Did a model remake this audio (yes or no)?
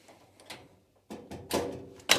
no